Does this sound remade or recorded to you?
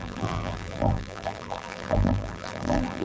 remade